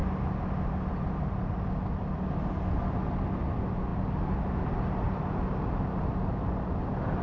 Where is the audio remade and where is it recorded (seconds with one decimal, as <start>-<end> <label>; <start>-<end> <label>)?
0.0-7.2 recorded